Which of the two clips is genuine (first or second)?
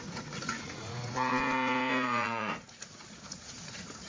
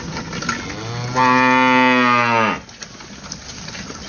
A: second